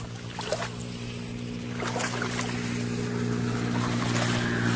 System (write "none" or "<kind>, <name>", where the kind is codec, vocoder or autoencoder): none